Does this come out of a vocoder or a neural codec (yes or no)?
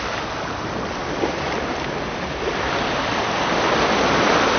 no